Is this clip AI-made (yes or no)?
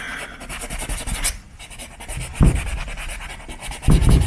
no